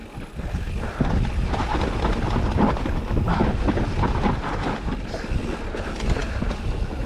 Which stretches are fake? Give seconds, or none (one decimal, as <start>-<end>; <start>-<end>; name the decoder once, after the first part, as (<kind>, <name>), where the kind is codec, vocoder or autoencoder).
none